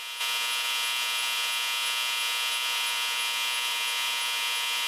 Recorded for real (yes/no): no